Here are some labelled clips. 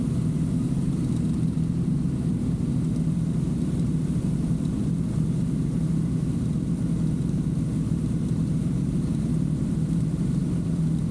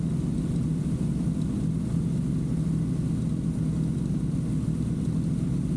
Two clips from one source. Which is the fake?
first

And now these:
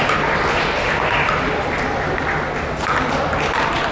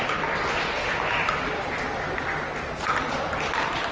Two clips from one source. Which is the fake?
second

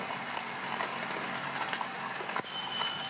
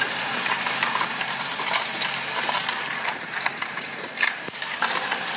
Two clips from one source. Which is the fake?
second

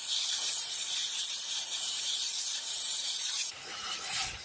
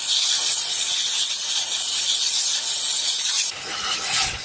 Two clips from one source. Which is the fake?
first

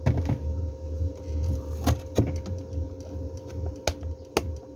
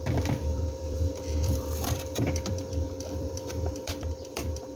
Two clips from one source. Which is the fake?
second